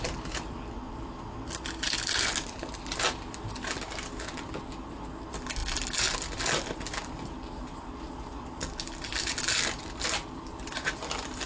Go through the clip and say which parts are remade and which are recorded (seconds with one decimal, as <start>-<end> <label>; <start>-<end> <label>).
0.0-11.5 recorded